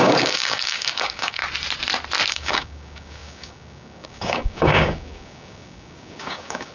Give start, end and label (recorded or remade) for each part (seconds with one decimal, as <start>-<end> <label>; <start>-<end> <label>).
0.0-1.4 remade; 1.4-2.3 recorded; 2.3-6.7 remade